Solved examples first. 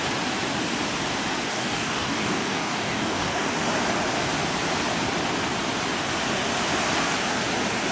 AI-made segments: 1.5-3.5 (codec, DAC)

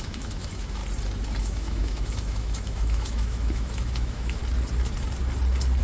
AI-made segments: 0.0-0.8 (autoencoder, DAC-VAE); 1.4-4.4

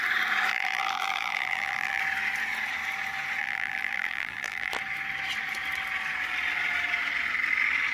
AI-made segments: 0.5-2.0 (vocoder, BigVGAN v2); 3.4-4.7